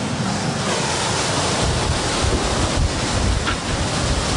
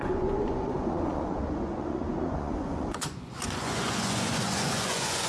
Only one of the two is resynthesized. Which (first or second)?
second